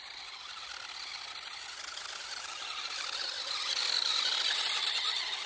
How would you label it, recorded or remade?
recorded